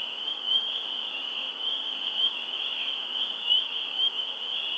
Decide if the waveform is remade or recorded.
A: remade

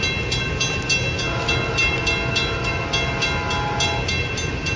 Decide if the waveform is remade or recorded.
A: recorded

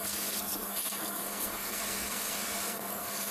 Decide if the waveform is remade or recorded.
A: remade